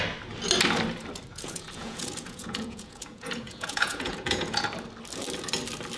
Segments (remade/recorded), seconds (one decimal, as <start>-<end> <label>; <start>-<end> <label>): 0.0-1.3 recorded; 1.3-4.6 remade; 4.6-6.0 recorded